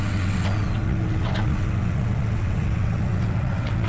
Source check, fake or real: fake